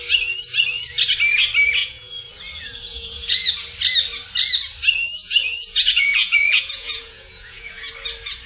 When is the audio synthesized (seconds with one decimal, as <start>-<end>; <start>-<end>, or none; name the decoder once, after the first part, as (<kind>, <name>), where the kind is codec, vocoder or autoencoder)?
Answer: 1.8-2.3 (vocoder, Vocos); 2.9-3.5; 5.2-7.9